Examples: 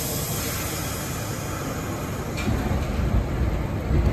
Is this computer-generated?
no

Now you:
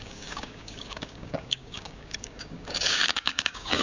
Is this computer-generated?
yes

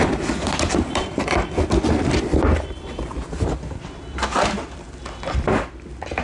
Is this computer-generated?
yes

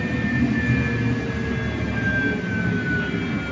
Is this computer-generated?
no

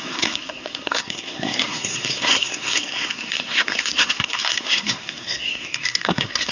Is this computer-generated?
yes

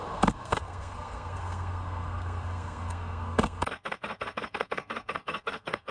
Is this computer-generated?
yes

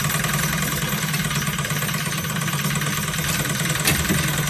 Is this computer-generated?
no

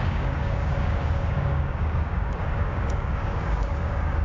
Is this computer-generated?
yes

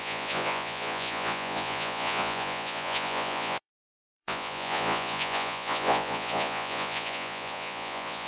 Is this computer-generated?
yes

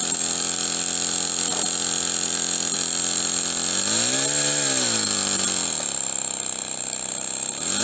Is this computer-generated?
yes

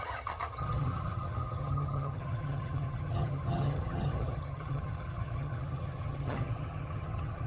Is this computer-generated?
yes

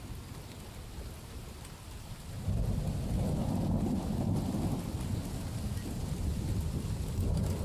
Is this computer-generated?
no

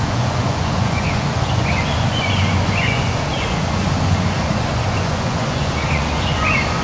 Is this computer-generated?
yes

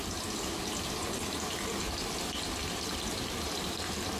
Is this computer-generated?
no